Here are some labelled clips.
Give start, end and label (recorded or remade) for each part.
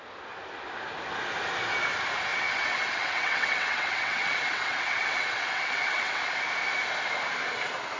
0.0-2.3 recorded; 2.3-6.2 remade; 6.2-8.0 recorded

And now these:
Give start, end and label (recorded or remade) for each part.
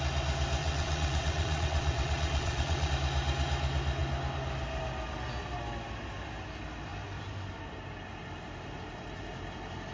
0.0-0.6 recorded; 0.6-2.9 remade; 2.9-9.9 recorded